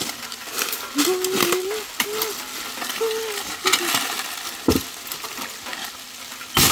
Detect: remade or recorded recorded